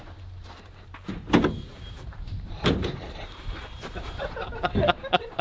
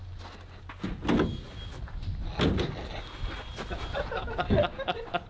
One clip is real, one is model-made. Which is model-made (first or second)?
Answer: first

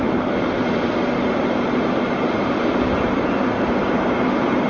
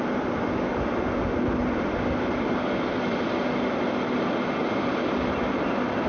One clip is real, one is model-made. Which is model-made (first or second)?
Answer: first